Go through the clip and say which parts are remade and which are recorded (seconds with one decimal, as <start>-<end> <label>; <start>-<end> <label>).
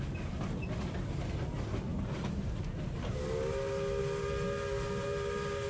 0.0-5.7 recorded